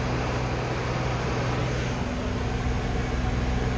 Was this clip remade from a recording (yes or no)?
no